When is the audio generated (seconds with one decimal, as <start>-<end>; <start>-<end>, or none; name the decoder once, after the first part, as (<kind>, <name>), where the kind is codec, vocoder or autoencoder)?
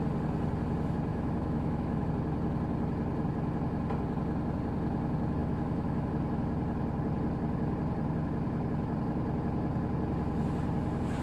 1.1-2.1 (autoencoder, DAC-VAE); 5.4-6.1